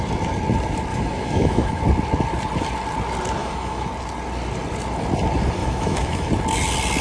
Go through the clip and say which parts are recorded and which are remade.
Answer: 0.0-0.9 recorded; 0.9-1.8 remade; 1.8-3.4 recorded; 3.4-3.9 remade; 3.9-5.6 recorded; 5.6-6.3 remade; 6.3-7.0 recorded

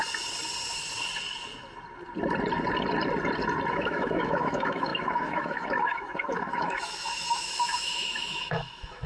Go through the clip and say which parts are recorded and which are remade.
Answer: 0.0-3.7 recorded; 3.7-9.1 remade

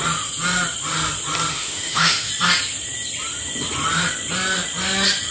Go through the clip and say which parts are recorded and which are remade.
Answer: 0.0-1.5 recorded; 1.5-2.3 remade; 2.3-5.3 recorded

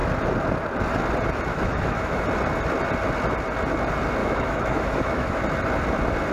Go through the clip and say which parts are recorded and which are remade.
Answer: 0.0-1.5 recorded; 1.5-2.2 remade; 2.2-4.2 recorded; 4.2-5.4 remade; 5.4-6.3 recorded

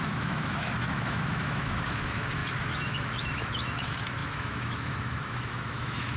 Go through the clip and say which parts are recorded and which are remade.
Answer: 0.0-6.2 remade